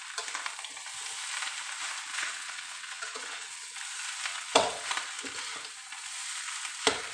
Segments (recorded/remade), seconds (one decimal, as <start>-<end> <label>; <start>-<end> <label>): 0.0-2.1 recorded; 2.1-3.8 remade; 3.8-4.3 recorded; 4.3-4.9 remade; 4.9-7.1 recorded